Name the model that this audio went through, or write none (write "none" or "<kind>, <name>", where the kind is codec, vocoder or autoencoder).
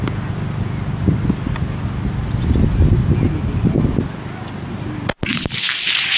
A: none